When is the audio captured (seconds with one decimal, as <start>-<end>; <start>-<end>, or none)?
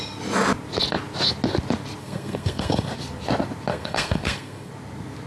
0.0-2.0; 2.9-3.7; 4.7-5.3